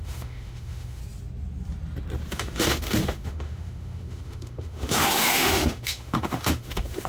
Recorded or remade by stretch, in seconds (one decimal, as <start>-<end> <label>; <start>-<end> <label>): 0.0-1.0 remade; 1.0-2.3 recorded; 2.3-7.1 remade